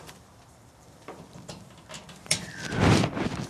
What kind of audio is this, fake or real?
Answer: fake